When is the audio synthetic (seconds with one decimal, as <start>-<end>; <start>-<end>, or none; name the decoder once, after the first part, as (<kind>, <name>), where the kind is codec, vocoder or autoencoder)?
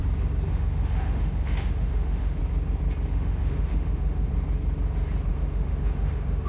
0.5-2.4 (autoencoder, DAC-VAE); 3.1-4.3; 5.3-6.5